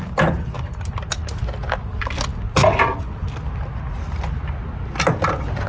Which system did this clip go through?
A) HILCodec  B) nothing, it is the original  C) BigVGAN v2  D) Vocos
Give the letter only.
B